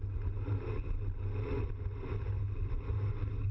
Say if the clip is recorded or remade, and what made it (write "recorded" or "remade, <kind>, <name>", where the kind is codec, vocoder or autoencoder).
recorded